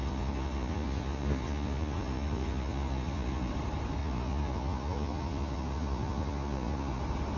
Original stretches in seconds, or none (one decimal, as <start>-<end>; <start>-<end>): 3.5-4.0; 7.0-7.4